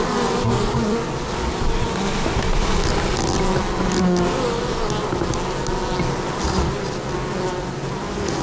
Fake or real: real